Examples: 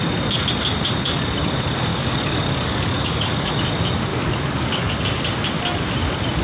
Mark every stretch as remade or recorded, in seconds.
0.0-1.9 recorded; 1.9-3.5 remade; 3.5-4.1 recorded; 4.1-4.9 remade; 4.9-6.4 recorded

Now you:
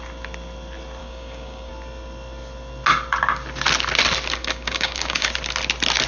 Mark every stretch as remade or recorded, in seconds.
0.0-1.0 recorded; 1.0-1.7 remade; 1.7-4.4 recorded; 4.4-5.3 remade; 5.3-6.1 recorded